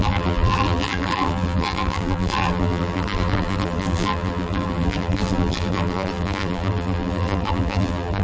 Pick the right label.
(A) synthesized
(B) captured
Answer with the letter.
A